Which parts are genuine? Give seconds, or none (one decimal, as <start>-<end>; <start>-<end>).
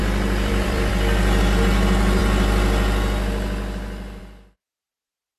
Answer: 0.9-5.4